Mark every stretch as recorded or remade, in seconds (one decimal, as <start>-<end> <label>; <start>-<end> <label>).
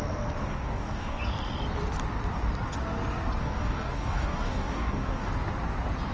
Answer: 0.0-0.5 recorded; 0.5-1.2 remade; 1.2-3.4 recorded; 3.4-5.3 remade; 5.3-6.1 recorded